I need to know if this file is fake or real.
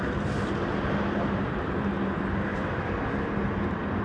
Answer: real